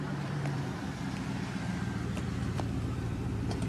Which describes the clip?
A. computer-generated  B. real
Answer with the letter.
A